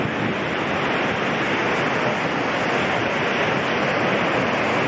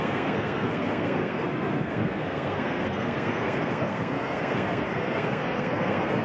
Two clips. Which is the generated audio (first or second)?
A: second